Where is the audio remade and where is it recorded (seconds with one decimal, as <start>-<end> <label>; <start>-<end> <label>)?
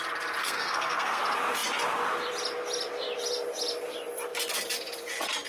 0.0-0.4 recorded; 0.4-1.2 remade; 1.2-5.5 recorded